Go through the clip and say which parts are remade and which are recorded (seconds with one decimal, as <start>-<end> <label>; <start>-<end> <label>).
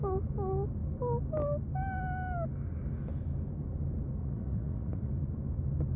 0.0-4.2 recorded; 4.2-5.1 remade; 5.1-6.0 recorded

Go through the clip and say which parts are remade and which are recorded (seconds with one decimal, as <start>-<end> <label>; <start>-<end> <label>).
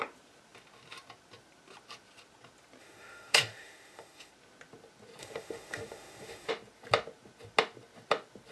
0.0-2.8 recorded; 2.8-4.3 remade; 4.3-5.2 recorded; 5.2-6.5 remade; 6.5-8.5 recorded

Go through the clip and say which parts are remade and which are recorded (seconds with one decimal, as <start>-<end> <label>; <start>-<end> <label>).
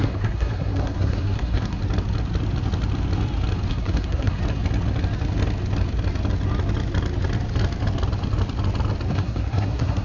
0.0-1.8 remade; 1.8-3.7 recorded; 3.7-4.4 remade; 4.4-9.1 recorded; 9.1-10.0 remade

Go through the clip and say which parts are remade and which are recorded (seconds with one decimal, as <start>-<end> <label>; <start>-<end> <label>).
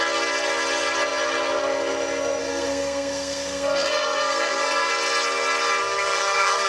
0.0-2.4 recorded; 2.4-4.9 remade; 4.9-5.8 recorded; 5.8-6.7 remade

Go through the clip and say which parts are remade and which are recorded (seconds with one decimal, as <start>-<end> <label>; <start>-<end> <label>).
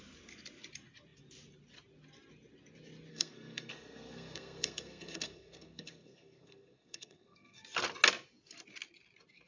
0.0-3.1 recorded; 3.1-7.6 remade; 7.6-9.5 recorded